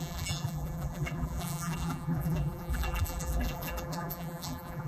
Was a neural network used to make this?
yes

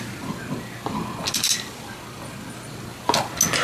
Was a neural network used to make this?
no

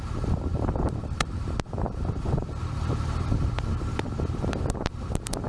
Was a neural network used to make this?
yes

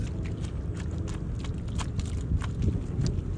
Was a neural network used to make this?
no